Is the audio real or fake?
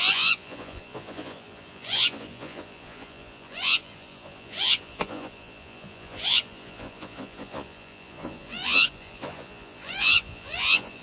fake